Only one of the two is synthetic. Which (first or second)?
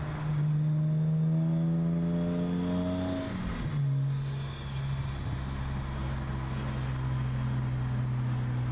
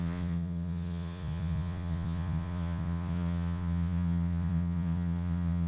second